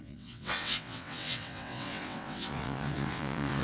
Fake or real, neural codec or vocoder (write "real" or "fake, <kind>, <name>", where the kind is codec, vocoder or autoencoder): fake, vocoder, WaveNeXt